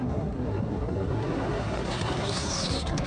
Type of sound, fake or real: fake